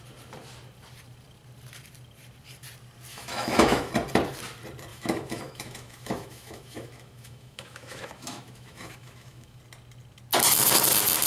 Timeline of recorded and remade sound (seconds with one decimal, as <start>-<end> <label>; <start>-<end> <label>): 0.0-3.1 recorded; 3.1-3.9 remade; 3.9-4.9 recorded; 4.9-9.6 remade; 9.6-11.3 recorded